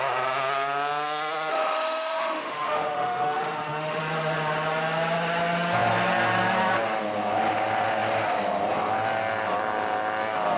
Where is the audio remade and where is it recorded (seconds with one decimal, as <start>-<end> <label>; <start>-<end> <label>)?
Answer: 0.0-1.5 recorded; 1.5-4.0 remade; 4.0-10.6 recorded